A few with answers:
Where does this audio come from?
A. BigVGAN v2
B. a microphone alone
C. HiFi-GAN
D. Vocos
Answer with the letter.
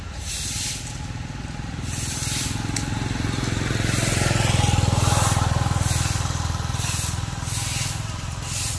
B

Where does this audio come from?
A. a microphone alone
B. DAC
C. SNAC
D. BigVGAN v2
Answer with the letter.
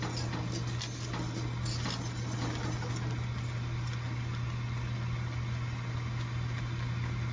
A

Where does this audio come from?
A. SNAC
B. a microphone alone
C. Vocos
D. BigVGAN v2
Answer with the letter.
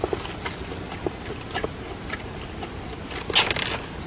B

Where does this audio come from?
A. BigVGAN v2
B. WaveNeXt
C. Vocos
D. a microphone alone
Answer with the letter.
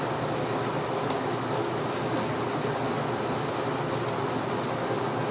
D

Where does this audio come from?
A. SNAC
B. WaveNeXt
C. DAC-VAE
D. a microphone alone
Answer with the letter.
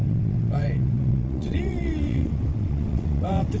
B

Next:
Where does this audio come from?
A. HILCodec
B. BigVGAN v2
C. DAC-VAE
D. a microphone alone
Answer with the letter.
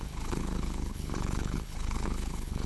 A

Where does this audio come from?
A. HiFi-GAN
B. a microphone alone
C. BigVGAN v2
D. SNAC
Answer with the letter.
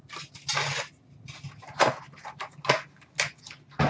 B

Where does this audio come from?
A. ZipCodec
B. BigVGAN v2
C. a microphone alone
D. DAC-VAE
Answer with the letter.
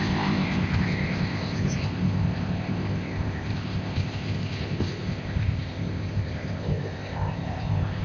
A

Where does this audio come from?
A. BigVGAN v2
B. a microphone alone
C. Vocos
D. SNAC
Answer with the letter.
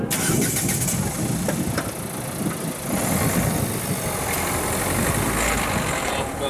B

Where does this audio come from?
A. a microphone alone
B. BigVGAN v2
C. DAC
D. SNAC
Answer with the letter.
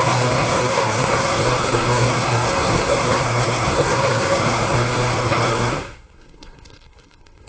D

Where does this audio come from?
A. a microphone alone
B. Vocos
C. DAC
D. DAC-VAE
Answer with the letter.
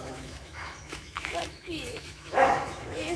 D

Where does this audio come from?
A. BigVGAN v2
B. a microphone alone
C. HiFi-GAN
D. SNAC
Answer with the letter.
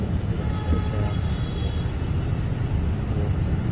B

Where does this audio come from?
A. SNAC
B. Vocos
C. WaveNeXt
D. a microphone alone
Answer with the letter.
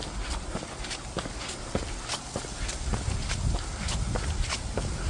D